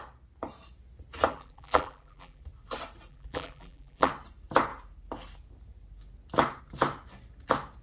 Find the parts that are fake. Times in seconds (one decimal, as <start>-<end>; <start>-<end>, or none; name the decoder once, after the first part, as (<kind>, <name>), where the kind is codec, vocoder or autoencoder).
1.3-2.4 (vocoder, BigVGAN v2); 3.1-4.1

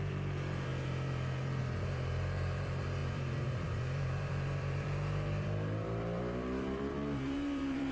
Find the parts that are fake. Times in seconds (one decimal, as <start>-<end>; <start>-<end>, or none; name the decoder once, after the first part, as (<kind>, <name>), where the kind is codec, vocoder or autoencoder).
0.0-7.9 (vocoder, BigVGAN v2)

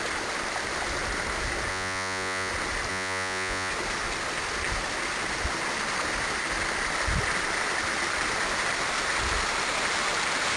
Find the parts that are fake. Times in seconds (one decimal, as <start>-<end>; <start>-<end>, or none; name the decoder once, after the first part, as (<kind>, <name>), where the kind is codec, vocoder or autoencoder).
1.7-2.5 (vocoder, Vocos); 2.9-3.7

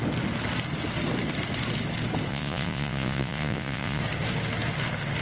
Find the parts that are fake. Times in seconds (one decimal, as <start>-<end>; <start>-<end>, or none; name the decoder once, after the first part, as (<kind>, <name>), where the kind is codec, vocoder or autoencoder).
2.3-4.0 (vocoder, Vocos)

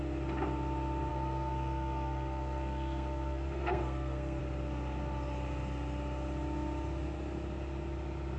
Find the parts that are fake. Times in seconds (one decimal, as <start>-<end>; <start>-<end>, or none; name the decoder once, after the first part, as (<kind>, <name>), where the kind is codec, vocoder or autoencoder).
1.1-4.4 (codec, SNAC)